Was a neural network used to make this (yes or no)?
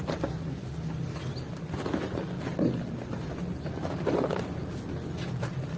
no